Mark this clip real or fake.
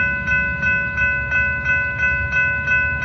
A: real